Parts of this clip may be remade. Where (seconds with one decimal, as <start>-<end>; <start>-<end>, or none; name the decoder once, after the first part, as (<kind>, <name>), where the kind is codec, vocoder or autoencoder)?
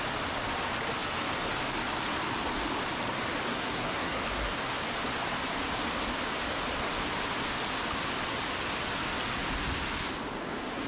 3.5-4.2 (codec, SNAC)